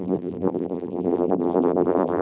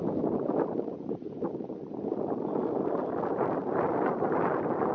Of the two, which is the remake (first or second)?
first